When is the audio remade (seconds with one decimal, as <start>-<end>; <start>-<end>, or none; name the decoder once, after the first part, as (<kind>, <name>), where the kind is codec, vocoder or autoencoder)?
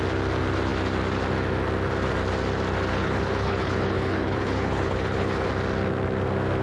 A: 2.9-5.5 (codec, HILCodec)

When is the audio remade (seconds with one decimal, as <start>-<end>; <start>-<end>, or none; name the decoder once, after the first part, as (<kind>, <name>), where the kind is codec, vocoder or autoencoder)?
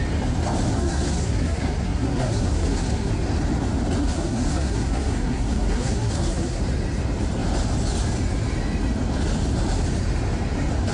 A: 0.7-3.1 (codec, SNAC); 4.0-6.6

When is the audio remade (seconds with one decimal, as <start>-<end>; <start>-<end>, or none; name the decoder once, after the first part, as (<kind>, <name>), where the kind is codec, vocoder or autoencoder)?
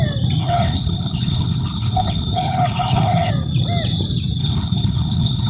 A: 0.4-3.3 (codec, HILCodec); 4.4-5.5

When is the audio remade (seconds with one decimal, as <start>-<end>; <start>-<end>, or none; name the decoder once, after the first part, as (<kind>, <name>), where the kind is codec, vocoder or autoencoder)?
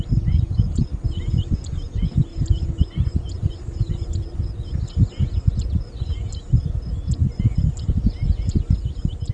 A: 0.9-1.7 (vocoder, BigVGAN v2); 2.3-4.4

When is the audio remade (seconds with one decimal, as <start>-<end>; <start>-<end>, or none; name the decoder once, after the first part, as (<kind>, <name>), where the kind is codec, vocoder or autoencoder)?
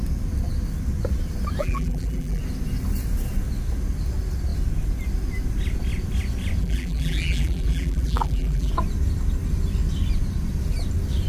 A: 1.6-2.4 (vocoder, BigVGAN v2); 6.6-8.7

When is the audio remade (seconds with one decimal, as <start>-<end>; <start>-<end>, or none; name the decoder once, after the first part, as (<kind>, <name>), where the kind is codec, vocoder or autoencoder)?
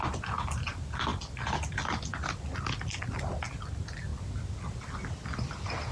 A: none